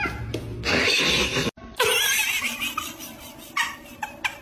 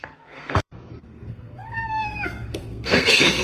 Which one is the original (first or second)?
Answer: first